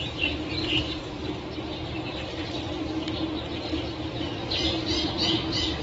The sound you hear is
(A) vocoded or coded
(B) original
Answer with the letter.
B